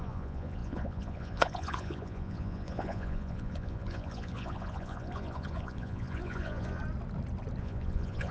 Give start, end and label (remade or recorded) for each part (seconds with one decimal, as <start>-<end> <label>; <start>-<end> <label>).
0.0-6.8 remade; 6.8-7.6 recorded; 7.6-8.3 remade